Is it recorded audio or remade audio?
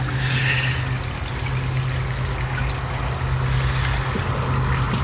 recorded